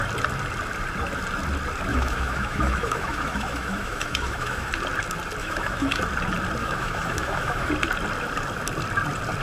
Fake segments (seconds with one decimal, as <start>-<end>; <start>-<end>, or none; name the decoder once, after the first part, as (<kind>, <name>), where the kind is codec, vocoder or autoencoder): 1.9-4.7 (autoencoder, DAC-VAE); 5.4-6.0; 6.6-7.7